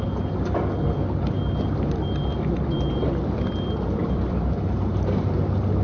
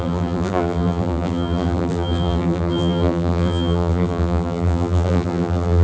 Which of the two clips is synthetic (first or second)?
second